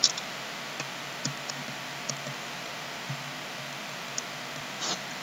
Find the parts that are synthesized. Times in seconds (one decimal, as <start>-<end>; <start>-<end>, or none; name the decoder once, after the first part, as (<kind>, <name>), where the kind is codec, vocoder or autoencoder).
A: none